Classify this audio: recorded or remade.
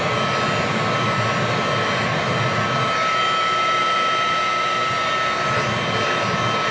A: recorded